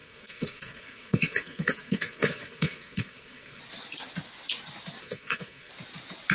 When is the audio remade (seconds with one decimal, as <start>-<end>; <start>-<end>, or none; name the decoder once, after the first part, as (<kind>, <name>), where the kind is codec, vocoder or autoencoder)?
0.0-3.6 (codec, SNAC); 5.0-5.7